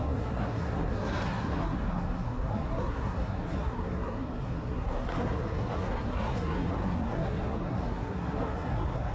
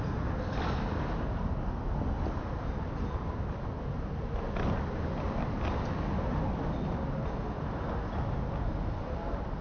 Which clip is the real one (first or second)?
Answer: second